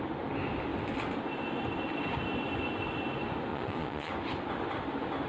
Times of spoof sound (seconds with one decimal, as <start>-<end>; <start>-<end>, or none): 3.5-4.1